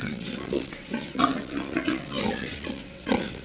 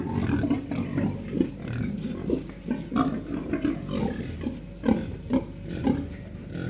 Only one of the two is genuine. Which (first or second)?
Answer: second